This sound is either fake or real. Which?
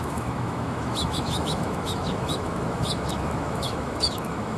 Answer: fake